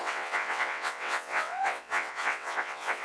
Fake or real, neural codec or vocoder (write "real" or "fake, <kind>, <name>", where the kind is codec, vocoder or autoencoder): fake, vocoder, WaveNeXt